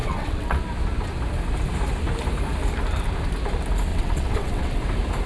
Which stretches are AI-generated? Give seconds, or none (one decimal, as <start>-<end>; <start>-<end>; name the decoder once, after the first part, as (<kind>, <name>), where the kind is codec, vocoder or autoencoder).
0.0-0.6 (vocoder, WaveNeXt); 3.9-4.8